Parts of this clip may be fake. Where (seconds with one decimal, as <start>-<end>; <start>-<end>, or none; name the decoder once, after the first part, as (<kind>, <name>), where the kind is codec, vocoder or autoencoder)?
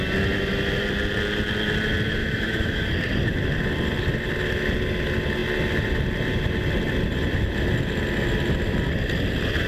2.2-2.9 (autoencoder, DAC-VAE)